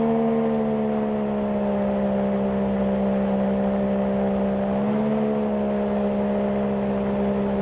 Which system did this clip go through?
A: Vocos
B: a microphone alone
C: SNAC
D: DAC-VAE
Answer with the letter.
B